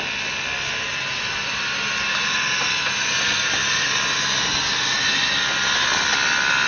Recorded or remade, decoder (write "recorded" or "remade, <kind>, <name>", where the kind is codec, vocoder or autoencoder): recorded